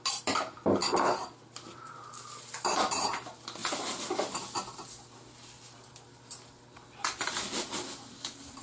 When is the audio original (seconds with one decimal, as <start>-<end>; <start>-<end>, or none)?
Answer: 0.0-8.6